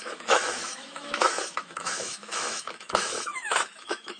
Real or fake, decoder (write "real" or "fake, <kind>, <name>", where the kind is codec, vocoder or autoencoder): fake, autoencoder, DAC-VAE